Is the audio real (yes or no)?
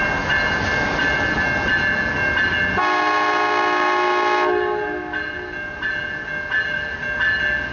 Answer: yes